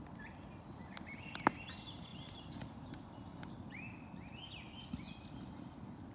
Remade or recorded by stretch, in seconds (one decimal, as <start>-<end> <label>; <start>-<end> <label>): 0.0-6.1 recorded